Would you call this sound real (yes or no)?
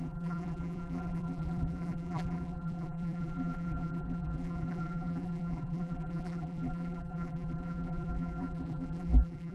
no